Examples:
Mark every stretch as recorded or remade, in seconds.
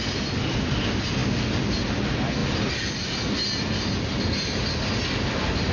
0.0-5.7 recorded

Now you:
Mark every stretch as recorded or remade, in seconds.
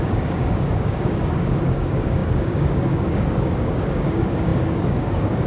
0.0-5.5 remade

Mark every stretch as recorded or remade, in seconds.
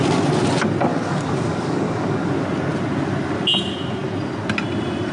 0.0-0.9 recorded; 0.9-2.3 remade; 2.3-5.1 recorded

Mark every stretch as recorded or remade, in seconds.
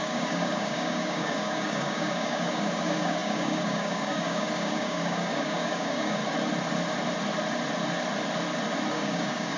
0.0-6.2 remade; 6.2-8.9 recorded; 8.9-9.6 remade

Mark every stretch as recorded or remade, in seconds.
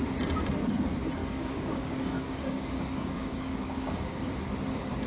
0.0-1.2 recorded; 1.2-4.3 remade; 4.3-5.1 recorded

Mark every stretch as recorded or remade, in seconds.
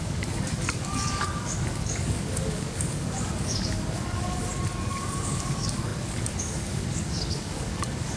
0.0-4.4 remade; 4.4-4.9 recorded; 4.9-8.2 remade